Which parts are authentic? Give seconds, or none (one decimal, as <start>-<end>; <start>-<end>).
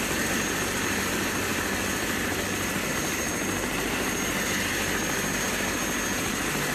0.0-6.7